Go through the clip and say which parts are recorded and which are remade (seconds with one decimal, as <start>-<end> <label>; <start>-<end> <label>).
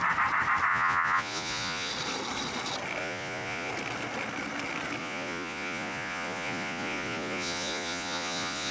0.0-0.7 recorded; 0.7-1.9 remade; 1.9-3.0 recorded; 3.0-3.7 remade; 3.7-5.0 recorded; 5.0-8.7 remade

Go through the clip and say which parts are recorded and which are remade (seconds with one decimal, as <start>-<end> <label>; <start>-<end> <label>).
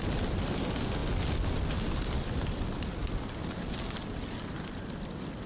0.0-5.5 recorded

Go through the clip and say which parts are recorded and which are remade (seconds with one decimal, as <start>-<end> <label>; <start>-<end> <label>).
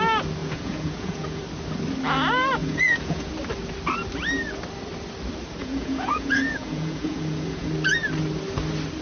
0.0-0.4 recorded; 0.4-1.4 remade; 1.4-2.6 recorded; 2.6-3.3 remade; 3.3-5.6 recorded; 5.6-7.7 remade; 7.7-9.0 recorded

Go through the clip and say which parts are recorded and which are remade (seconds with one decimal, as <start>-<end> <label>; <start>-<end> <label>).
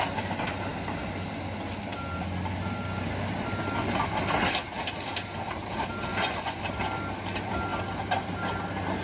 0.0-6.1 recorded; 6.1-6.6 remade; 6.6-9.0 recorded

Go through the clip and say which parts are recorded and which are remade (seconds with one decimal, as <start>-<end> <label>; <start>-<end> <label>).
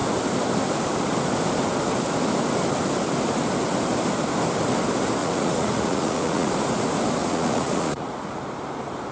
0.0-5.2 recorded; 5.2-6.5 remade; 6.5-7.2 recorded; 7.2-8.4 remade; 8.4-9.1 recorded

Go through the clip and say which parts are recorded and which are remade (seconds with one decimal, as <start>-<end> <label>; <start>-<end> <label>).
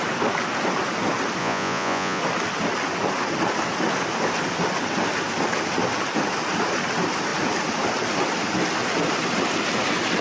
0.0-1.4 recorded; 1.4-2.2 remade; 2.2-10.2 recorded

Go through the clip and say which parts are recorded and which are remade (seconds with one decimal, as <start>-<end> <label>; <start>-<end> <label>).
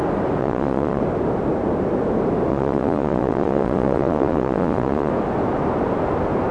0.0-0.4 recorded; 0.4-1.0 remade; 1.0-2.5 recorded; 2.5-5.1 remade; 5.1-6.5 recorded